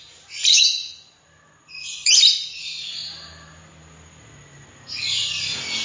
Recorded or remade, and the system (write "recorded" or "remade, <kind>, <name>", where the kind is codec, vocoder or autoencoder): recorded